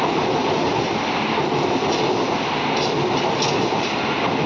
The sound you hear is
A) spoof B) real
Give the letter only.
B